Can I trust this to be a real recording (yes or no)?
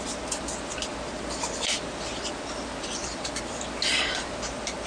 yes